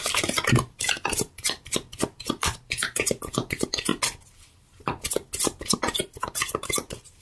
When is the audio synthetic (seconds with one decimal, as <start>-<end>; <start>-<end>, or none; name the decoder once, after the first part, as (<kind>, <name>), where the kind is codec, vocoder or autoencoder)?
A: 0.0-3.9 (vocoder, BigVGAN v2); 6.2-7.2

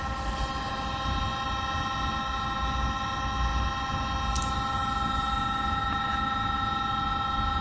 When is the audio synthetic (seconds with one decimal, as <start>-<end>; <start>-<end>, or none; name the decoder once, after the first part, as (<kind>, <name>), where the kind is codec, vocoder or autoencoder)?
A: none